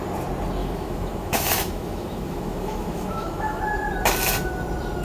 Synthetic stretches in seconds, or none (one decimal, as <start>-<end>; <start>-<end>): 0.6-3.6